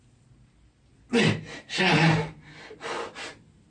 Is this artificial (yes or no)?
no